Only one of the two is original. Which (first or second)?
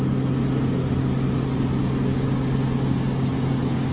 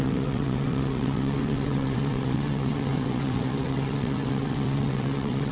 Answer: first